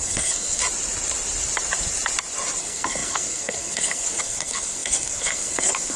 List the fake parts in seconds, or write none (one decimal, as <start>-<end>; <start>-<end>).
0.0-0.6; 2.6-6.0